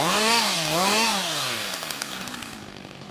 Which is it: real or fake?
fake